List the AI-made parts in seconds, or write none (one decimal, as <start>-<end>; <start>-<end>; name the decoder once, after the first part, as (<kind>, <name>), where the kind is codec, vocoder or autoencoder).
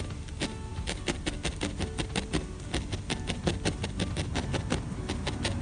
none